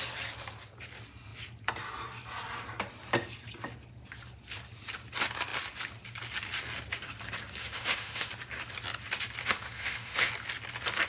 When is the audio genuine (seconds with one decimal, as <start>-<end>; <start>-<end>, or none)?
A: 0.0-7.6; 8.3-9.4; 10.3-11.1